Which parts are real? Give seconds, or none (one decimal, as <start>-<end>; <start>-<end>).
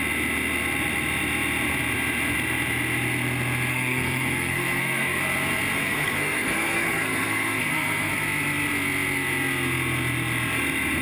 0.0-3.7; 5.2-5.8; 8.1-11.0